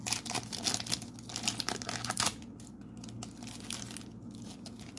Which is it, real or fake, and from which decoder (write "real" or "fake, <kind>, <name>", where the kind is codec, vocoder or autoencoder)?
real